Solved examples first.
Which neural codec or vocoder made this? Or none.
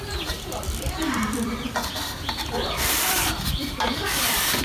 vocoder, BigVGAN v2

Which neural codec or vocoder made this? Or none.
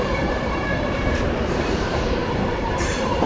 vocoder, BigVGAN v2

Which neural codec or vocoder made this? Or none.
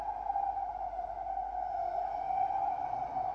none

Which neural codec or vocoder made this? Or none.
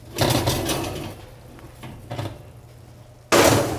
none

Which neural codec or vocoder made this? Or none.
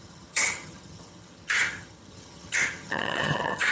vocoder, HiFi-GAN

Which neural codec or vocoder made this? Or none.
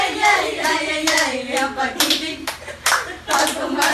vocoder, BigVGAN v2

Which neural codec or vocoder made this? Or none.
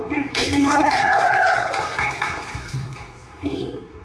codec, SNAC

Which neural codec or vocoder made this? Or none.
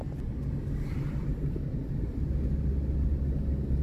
none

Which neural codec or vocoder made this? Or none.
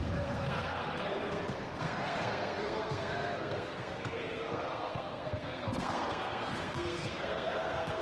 codec, SNAC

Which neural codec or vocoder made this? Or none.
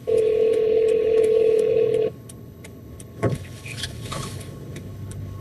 codec, HILCodec